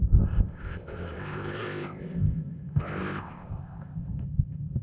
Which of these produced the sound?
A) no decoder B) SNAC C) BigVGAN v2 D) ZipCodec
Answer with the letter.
D